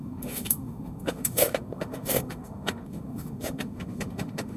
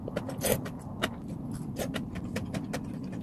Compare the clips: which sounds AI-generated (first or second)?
first